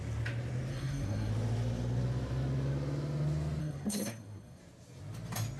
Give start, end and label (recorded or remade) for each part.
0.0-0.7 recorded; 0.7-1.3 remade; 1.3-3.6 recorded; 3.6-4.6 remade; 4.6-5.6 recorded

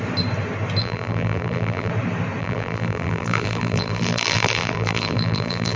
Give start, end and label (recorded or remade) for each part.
0.0-0.8 recorded; 0.8-1.9 remade; 1.9-2.4 recorded; 2.4-5.8 remade

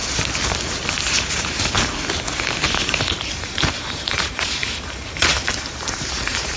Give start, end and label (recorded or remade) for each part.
0.0-3.1 recorded; 3.1-6.6 remade

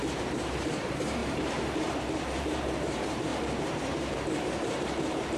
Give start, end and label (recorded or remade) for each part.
0.0-5.4 remade

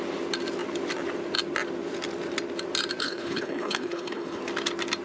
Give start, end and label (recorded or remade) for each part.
0.0-3.0 recorded; 3.0-4.4 remade; 4.4-5.0 recorded

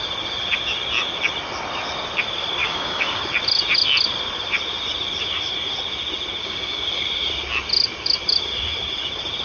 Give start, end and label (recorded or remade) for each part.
0.0-2.6 recorded; 2.6-3.2 remade; 3.2-6.4 recorded; 6.4-7.0 remade; 7.0-9.4 recorded